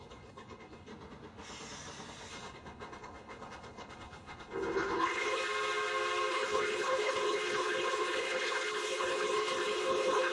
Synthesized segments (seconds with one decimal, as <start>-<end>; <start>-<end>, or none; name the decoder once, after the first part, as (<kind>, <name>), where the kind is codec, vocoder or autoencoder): 0.0-0.9 (codec, HILCodec); 2.3-5.4; 6.3-10.3